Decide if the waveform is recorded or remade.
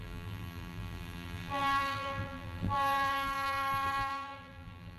remade